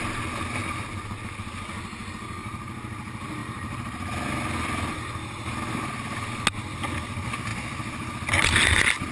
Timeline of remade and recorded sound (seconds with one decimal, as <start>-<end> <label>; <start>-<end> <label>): 0.0-9.1 recorded